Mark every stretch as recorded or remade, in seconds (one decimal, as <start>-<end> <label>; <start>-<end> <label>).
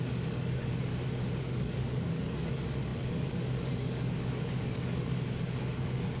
0.0-0.9 remade; 0.9-1.4 recorded; 1.4-6.2 remade